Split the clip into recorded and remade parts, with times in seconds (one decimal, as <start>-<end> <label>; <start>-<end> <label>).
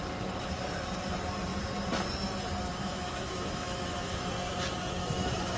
0.0-2.7 recorded; 2.7-4.2 remade; 4.2-5.0 recorded; 5.0-5.6 remade